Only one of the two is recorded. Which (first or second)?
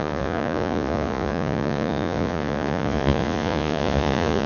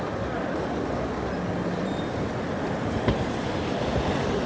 second